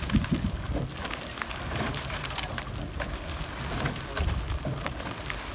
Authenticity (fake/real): real